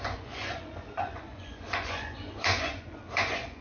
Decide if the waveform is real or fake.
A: fake